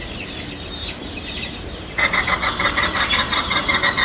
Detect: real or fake fake